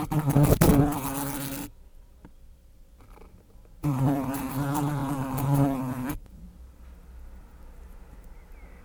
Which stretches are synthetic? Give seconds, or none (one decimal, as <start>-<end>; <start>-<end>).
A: 3.8-4.5; 5.0-6.4